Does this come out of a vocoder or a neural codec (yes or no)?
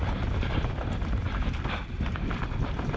no